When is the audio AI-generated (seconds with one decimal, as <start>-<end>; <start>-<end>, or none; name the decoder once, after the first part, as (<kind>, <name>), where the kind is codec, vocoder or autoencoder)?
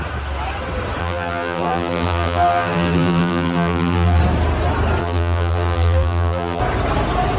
1.0-4.2 (vocoder, BigVGAN v2); 5.0-6.6